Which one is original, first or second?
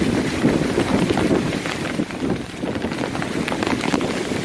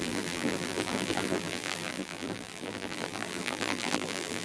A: first